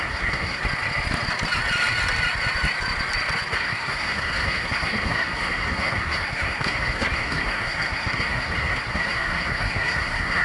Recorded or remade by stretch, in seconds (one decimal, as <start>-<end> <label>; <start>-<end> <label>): 0.0-0.6 remade; 0.6-3.5 recorded; 3.5-10.4 remade